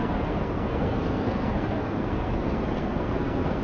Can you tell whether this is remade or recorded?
remade